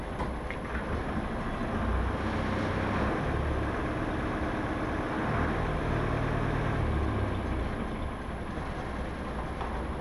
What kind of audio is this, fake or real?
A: real